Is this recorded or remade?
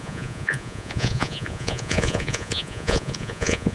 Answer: remade